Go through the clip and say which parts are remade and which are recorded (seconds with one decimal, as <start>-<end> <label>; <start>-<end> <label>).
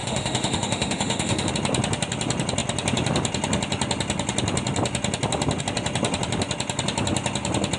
0.0-1.5 remade; 1.5-7.8 recorded